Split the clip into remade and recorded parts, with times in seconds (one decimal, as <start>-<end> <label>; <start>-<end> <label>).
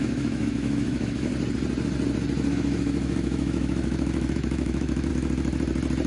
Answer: 0.0-1.3 remade; 1.3-2.5 recorded; 2.5-5.1 remade; 5.1-6.1 recorded